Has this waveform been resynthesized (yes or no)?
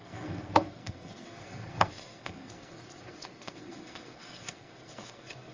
yes